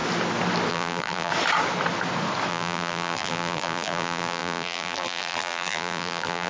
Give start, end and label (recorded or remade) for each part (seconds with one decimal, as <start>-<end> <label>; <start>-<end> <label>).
0.0-0.7 recorded; 0.7-1.3 remade; 1.3-2.5 recorded; 2.5-6.5 remade